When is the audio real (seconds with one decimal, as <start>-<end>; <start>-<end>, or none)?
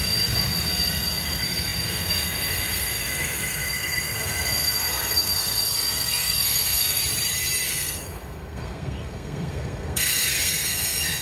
7.0-7.7